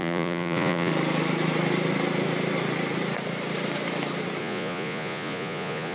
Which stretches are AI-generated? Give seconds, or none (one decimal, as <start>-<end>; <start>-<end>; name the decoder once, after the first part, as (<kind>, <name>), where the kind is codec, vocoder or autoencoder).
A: 0.0-0.9 (vocoder, Vocos); 4.4-5.9